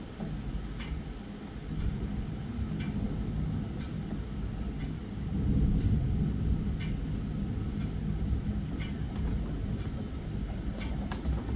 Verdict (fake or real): real